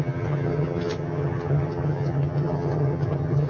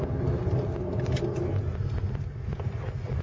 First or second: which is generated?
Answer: first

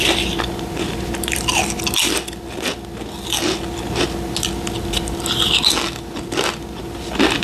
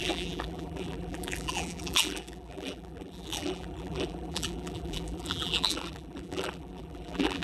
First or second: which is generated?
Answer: second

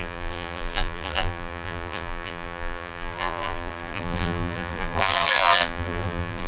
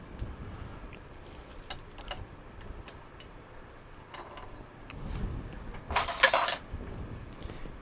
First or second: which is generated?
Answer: first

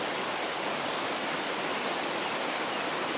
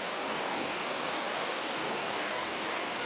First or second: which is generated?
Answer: second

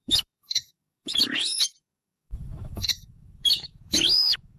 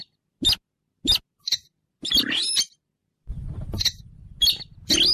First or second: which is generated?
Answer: first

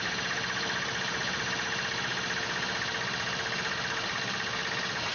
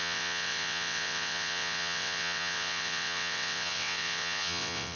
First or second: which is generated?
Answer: second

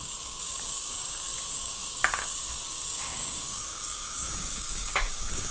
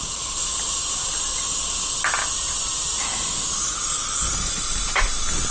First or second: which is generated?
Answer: first